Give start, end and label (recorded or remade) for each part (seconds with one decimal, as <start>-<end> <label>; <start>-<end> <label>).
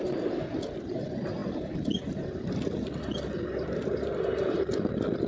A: 0.0-5.3 recorded